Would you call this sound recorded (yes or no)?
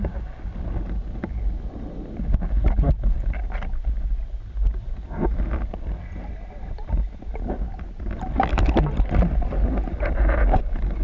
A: yes